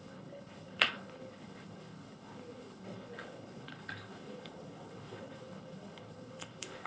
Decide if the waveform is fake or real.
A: fake